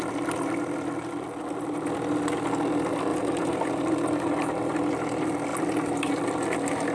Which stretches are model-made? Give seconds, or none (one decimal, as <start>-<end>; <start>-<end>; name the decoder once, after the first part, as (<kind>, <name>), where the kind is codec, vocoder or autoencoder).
3.1-3.7 (vocoder, BigVGAN v2)